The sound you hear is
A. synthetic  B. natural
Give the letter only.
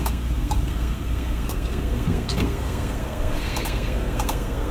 A